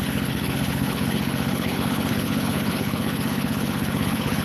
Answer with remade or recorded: remade